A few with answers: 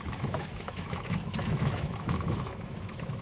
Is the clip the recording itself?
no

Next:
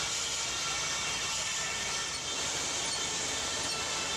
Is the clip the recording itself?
yes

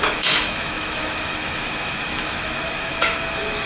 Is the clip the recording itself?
no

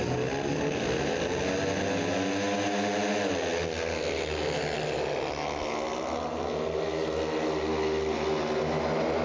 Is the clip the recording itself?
yes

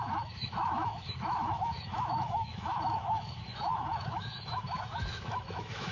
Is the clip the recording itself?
no